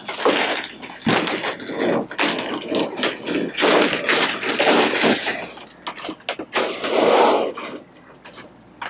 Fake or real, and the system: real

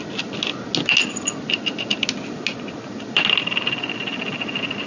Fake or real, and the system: real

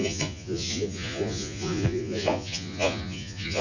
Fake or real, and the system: fake, vocoder, Vocos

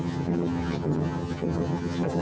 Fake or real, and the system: fake, vocoder, HiFi-GAN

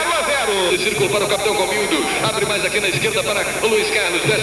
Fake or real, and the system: real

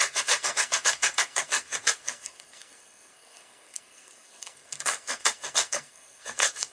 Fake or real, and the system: fake, codec, SNAC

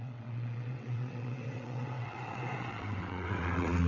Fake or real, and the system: fake, vocoder, WaveNeXt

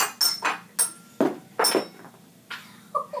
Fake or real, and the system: real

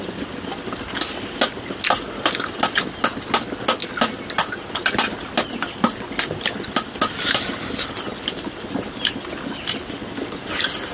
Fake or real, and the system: real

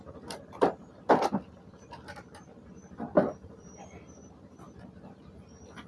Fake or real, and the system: real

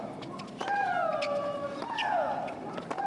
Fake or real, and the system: real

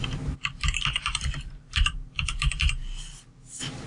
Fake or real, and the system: real